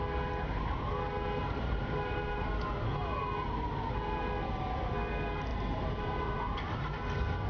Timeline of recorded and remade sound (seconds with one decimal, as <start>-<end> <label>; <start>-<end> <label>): 0.0-1.4 recorded; 1.4-2.5 remade; 2.5-5.5 recorded; 5.5-6.7 remade; 6.7-7.5 recorded